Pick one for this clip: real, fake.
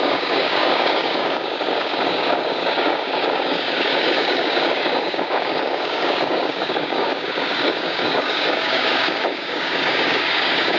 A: fake